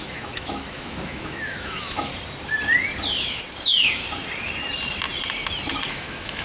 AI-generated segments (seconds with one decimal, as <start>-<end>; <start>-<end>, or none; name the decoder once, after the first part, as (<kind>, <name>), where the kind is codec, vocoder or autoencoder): 0.0-2.1 (autoencoder, DAC-VAE); 5.9-6.4